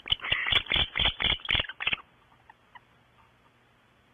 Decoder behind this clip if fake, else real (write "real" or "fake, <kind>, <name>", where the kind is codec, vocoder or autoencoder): real